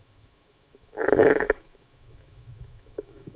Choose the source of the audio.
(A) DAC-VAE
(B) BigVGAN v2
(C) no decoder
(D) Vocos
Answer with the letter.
A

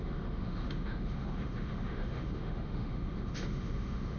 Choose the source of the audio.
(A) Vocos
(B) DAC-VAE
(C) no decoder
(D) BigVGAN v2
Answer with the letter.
B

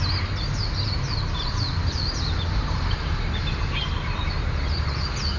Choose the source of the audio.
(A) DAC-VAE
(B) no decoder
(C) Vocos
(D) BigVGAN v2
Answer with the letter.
B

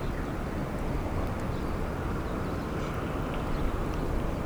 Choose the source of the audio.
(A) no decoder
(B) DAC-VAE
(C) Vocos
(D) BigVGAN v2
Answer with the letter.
A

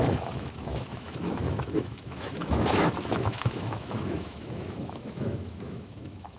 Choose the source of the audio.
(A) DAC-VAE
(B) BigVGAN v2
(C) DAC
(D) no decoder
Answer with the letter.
A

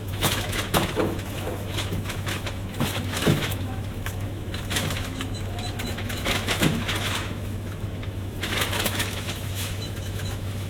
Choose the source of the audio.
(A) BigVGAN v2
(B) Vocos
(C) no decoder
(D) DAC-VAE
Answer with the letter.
D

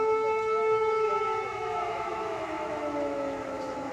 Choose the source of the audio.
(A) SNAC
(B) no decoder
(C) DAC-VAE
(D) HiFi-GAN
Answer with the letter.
C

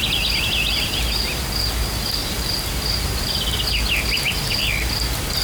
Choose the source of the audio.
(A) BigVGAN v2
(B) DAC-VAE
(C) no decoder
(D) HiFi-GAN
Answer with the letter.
C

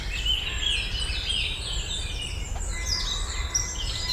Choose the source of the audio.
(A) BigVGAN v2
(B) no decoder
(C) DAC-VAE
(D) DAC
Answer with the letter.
B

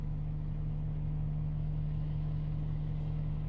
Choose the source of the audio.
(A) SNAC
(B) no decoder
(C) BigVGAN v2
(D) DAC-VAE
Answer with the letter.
D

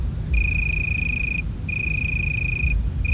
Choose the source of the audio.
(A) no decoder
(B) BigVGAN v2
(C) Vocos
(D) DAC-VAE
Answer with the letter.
A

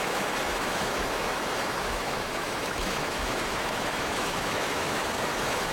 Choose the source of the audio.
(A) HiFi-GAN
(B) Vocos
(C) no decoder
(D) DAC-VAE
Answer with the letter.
D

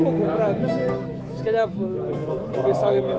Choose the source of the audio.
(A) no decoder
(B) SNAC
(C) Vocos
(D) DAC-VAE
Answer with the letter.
D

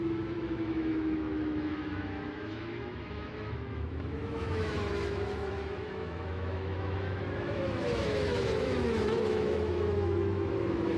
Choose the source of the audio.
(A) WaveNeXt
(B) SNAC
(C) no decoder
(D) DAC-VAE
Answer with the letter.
D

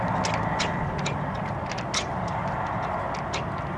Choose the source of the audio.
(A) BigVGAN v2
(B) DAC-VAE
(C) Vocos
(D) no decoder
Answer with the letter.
D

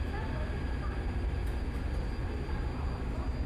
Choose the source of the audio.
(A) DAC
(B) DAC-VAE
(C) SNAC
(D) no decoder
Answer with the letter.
D